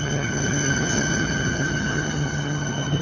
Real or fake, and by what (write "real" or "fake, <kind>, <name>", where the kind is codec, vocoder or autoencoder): fake, vocoder, HiFi-GAN